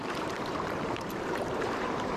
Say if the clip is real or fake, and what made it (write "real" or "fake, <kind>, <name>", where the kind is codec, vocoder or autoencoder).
fake, vocoder, BigVGAN v2